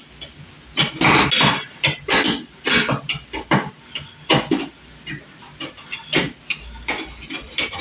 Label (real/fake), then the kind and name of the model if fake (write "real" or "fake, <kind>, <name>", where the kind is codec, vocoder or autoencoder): real